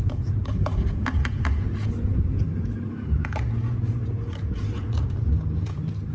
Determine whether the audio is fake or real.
fake